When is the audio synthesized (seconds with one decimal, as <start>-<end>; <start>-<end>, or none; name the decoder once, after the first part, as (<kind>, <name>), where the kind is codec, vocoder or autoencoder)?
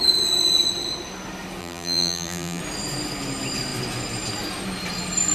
1.6-2.6 (vocoder, BigVGAN v2)